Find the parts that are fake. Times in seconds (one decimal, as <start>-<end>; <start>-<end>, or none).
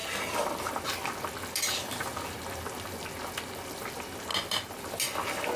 none